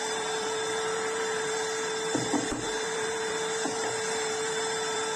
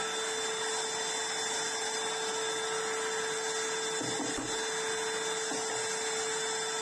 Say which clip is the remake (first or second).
first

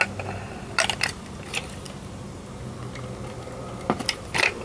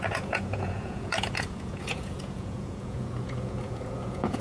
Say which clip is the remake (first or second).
second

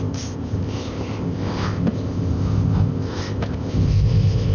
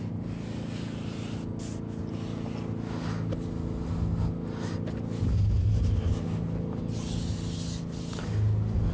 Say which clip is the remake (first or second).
first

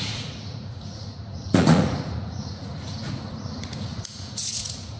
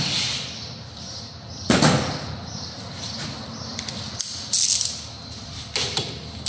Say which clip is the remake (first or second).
first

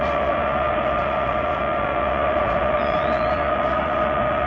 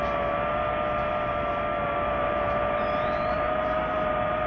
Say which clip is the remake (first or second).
first